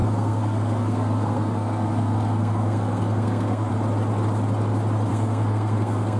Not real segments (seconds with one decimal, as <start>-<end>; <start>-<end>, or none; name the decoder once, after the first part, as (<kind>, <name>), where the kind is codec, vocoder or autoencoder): 0.0-3.7 (codec, SNAC); 5.1-6.2

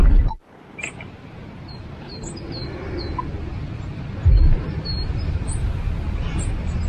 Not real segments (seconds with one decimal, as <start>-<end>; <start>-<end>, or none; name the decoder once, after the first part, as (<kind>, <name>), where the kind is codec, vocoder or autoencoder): 0.4-3.0 (vocoder, BigVGAN v2); 3.5-4.6

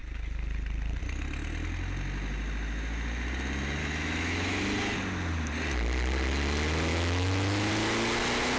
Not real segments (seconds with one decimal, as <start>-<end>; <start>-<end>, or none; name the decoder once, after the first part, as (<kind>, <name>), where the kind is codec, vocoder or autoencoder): 3.8-4.6 (autoencoder, DAC-VAE); 6.9-7.7

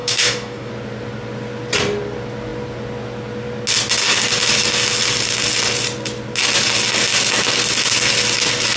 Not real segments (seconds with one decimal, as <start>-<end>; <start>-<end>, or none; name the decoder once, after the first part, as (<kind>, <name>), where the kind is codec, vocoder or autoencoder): 0.0-0.7 (codec, DAC)

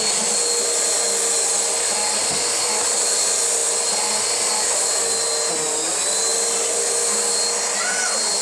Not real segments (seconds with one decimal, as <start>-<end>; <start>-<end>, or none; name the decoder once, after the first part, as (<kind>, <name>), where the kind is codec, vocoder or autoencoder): none

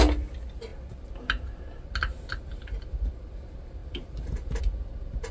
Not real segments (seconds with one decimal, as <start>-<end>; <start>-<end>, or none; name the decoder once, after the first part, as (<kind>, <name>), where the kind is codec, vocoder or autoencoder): none